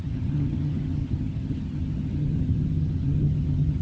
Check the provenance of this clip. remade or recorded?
remade